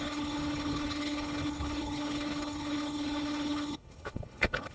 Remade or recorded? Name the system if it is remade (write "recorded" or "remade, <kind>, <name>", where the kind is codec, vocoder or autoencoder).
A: remade, codec, HILCodec